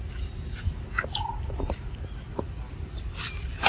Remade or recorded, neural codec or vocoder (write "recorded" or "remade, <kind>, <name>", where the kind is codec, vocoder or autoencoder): recorded